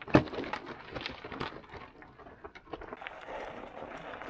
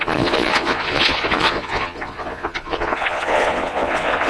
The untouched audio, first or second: first